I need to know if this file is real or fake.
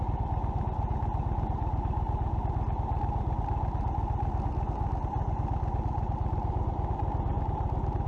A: real